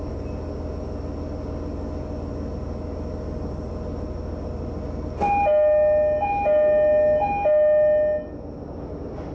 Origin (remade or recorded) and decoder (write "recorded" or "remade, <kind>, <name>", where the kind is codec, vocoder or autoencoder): recorded